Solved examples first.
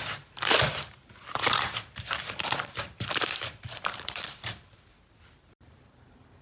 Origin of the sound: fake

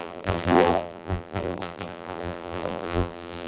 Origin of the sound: fake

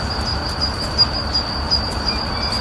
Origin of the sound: fake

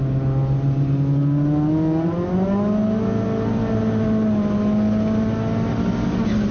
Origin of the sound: real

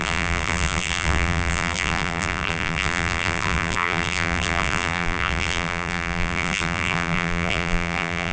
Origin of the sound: fake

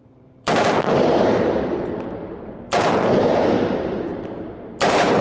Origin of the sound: fake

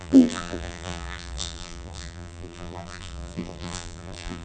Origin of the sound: fake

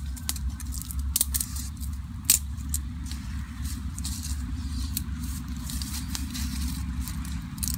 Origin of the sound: real